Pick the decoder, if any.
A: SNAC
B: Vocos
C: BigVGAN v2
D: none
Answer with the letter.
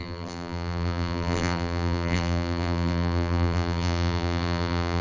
C